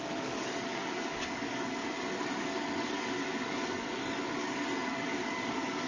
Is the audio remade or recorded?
remade